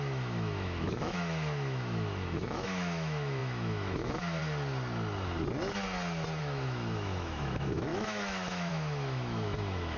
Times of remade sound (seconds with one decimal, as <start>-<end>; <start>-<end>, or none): 0.0-4.4; 6.4-10.0